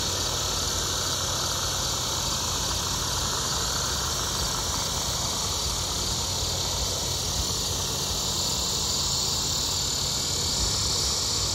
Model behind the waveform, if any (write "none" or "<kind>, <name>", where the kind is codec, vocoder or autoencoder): none